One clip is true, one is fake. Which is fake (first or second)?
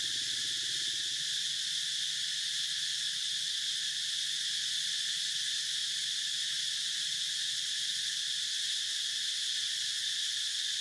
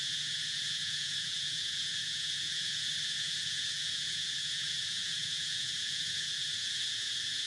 second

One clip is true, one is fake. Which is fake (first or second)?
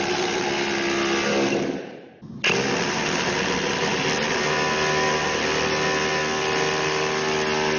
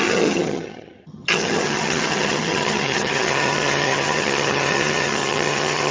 second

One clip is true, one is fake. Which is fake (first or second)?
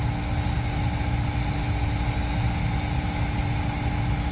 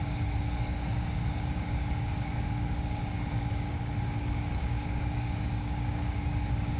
second